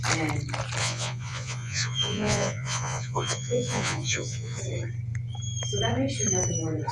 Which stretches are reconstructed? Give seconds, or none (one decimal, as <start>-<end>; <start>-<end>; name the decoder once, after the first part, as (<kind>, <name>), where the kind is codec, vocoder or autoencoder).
0.8-4.6 (vocoder, Vocos)